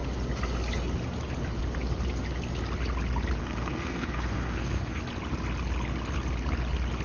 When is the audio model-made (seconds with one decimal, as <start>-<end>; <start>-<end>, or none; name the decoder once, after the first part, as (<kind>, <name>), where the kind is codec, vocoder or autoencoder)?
3.4-5.0 (codec, SNAC)